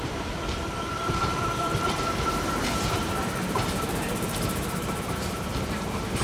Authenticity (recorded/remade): remade